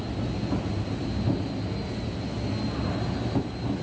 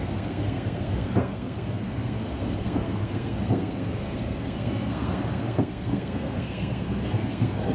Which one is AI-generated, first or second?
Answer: second